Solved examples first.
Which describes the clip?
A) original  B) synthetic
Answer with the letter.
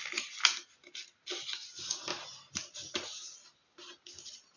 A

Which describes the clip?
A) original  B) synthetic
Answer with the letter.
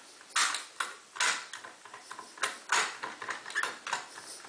A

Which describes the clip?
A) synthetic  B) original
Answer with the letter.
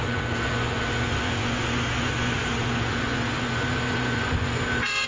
A